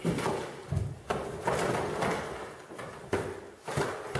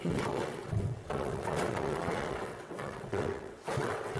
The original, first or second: first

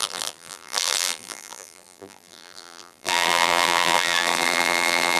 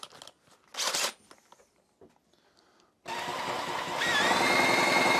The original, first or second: second